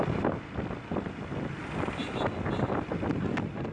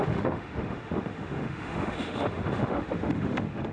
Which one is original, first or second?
first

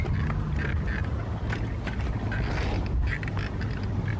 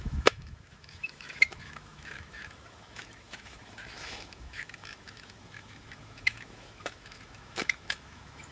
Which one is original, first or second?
first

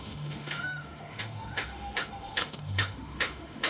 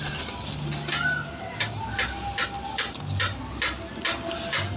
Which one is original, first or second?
second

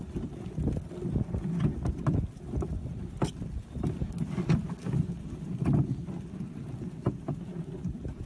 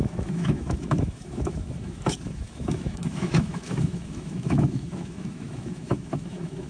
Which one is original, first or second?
first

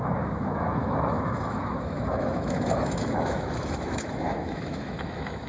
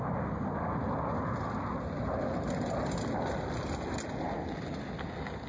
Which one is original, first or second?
second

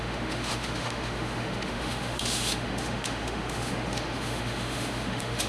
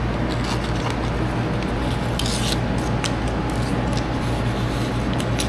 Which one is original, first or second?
second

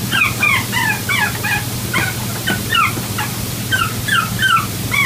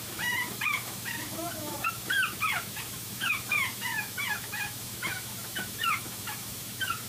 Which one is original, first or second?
first